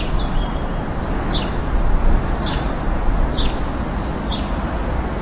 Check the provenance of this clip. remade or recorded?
recorded